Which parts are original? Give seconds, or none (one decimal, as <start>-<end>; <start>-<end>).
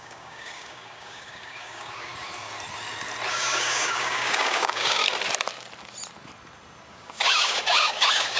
2.1-3.3; 5.0-6.9